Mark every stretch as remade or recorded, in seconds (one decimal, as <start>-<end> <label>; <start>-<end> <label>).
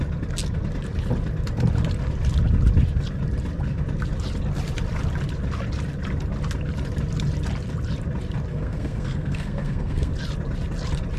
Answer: 0.0-8.5 recorded; 8.5-10.1 remade; 10.1-11.2 recorded